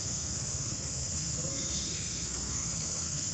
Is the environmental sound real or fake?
fake